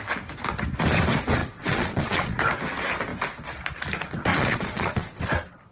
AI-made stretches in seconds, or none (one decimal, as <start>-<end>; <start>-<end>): 1.4-2.4; 4.3-5.2